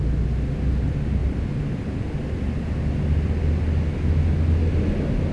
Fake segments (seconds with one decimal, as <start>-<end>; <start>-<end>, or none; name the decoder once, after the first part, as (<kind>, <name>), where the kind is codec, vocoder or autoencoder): none